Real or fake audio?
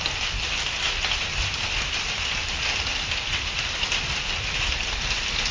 real